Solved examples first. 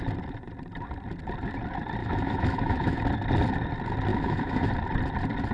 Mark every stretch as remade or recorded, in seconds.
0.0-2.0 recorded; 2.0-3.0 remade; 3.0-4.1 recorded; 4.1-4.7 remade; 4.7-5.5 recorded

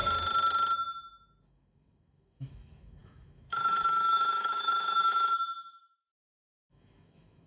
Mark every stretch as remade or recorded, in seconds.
0.0-1.4 recorded; 1.4-7.5 remade

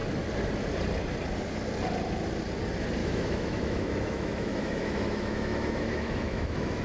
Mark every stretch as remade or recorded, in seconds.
0.0-3.0 recorded; 3.0-6.8 remade

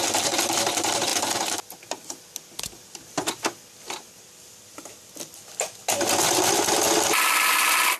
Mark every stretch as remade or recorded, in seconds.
0.0-8.0 recorded

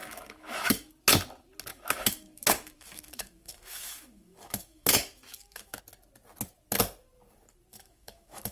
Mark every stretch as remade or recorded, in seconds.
0.0-0.9 remade; 0.9-1.7 recorded; 1.7-5.8 remade; 5.8-7.7 recorded; 7.7-8.5 remade

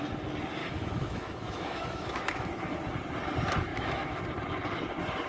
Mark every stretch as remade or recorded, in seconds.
0.0-0.6 recorded; 0.6-2.8 remade; 2.8-3.7 recorded; 3.7-4.2 remade; 4.2-5.3 recorded

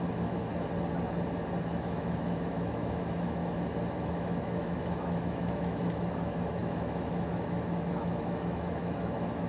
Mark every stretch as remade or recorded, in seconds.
0.0-0.5 remade; 0.5-1.7 recorded; 1.7-3.4 remade; 3.4-4.0 recorded; 4.0-9.5 remade

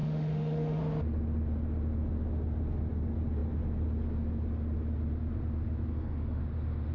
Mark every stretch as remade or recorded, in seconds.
0.0-0.8 remade; 0.8-5.9 recorded; 5.9-6.4 remade; 6.4-6.9 recorded